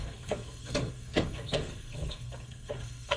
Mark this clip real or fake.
fake